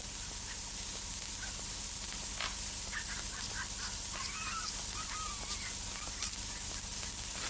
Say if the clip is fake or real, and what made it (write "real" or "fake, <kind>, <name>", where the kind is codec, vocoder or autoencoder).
real